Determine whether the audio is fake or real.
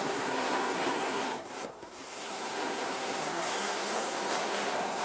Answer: fake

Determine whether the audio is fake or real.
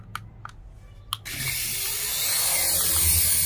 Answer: real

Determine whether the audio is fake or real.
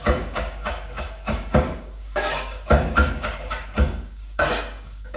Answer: fake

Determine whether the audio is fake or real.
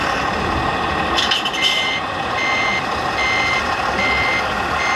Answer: real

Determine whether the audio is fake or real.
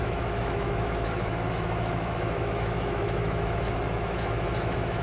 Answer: fake